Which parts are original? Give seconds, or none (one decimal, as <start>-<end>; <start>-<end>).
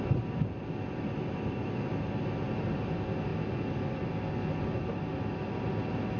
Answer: 0.0-6.2